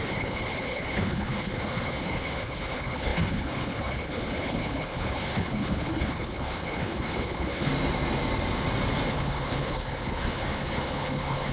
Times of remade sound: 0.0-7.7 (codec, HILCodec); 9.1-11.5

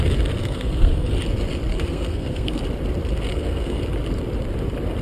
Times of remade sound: 0.4-1.1 (codec, SNAC); 1.7-2.6; 3.3-3.8

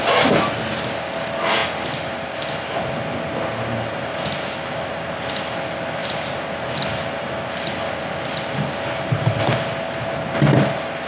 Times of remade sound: none

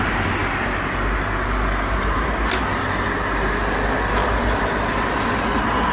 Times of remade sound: none

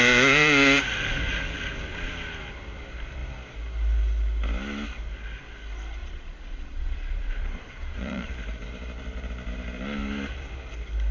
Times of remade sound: 6.0-8.3 (vocoder, Vocos)

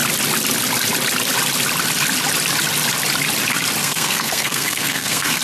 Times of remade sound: 3.8-5.4 (codec, SNAC)